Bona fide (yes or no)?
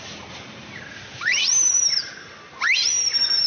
yes